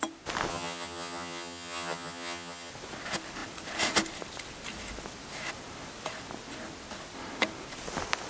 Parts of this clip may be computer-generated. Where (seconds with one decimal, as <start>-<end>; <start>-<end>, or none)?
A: 0.5-2.7